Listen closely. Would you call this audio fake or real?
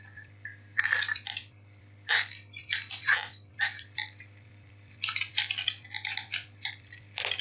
fake